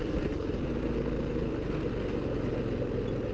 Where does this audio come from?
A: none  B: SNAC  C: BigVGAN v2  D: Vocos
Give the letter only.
A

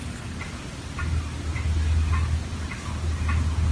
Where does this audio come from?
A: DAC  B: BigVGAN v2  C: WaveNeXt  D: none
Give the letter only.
D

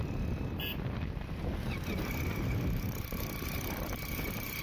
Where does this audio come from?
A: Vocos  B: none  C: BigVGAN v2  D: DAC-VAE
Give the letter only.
B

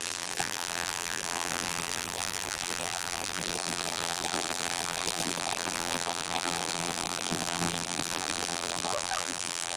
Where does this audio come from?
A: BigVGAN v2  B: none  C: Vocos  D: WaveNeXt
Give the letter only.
A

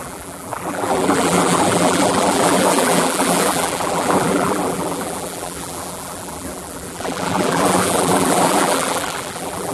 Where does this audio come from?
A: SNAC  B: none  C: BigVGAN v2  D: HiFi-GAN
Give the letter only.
C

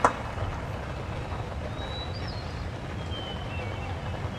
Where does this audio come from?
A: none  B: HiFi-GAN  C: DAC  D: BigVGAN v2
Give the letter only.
A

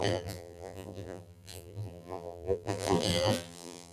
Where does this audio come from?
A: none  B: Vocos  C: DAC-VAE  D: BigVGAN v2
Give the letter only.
D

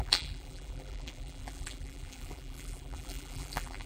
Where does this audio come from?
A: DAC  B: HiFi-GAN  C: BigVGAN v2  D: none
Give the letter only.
C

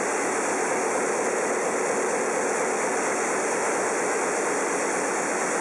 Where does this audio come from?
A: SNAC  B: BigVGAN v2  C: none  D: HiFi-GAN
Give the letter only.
C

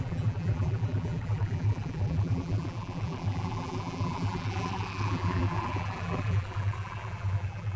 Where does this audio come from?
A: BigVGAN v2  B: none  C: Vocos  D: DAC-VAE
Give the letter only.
A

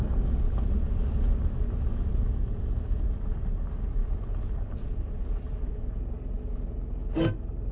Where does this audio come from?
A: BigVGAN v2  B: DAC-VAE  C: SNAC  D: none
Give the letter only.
D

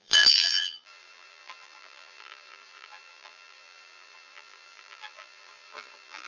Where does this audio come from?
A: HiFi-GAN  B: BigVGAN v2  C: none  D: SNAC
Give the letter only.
B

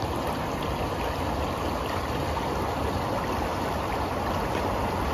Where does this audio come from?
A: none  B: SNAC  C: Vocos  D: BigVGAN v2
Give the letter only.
A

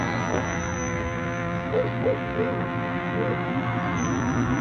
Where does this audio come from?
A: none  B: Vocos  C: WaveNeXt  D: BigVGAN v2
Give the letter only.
D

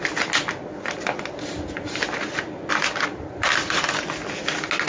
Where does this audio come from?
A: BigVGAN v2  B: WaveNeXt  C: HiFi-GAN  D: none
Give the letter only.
D